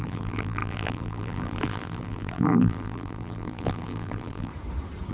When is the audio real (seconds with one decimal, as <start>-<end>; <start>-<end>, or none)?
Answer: 4.5-5.1